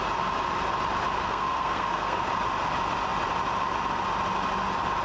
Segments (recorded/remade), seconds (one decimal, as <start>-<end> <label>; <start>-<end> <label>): 0.0-1.3 recorded; 1.3-2.2 remade; 2.2-5.0 recorded